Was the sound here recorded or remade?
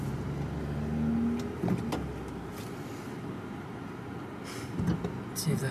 recorded